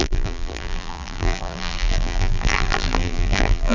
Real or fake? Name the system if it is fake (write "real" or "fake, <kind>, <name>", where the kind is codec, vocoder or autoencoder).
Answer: fake, vocoder, BigVGAN v2